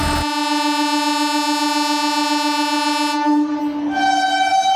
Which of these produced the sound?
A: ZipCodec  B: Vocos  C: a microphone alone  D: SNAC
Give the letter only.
C